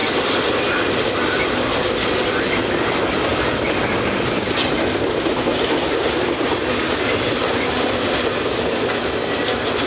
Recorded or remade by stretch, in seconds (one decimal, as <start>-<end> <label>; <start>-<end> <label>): 0.0-1.1 remade; 1.1-3.3 recorded; 3.3-5.3 remade; 5.3-9.9 recorded